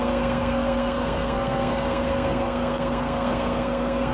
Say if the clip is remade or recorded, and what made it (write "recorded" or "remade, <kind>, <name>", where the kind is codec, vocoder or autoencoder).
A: remade, codec, SNAC